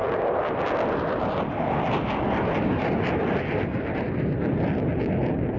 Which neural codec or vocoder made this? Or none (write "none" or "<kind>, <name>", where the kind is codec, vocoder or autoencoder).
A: none